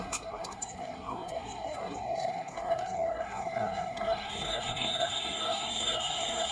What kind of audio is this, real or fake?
fake